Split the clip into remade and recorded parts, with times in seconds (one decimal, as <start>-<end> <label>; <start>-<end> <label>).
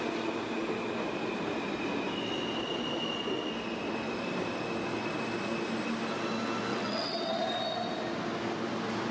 0.0-6.7 recorded; 6.7-7.4 remade; 7.4-9.1 recorded